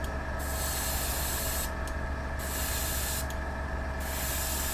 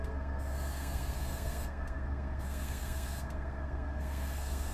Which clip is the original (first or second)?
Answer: first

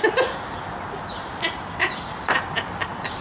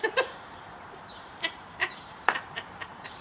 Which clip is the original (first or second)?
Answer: first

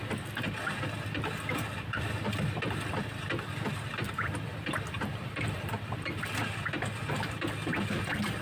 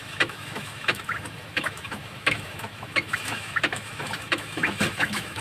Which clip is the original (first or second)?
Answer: first